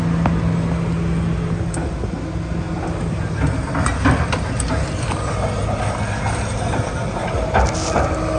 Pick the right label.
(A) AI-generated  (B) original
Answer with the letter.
B